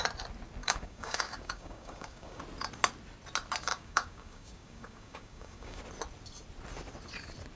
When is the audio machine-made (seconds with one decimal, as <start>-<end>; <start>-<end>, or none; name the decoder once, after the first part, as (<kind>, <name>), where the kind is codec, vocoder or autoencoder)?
0.6-2.4 (codec, DAC); 3.7-5.8